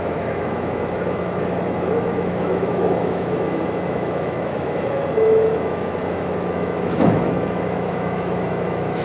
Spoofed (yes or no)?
yes